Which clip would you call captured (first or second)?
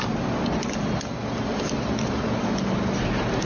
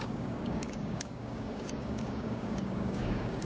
first